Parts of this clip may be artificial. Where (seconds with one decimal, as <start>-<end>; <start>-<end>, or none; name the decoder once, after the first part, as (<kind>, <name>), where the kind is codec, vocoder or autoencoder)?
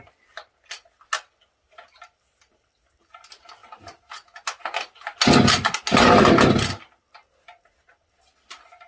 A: none